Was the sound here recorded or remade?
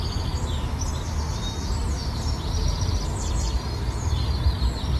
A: recorded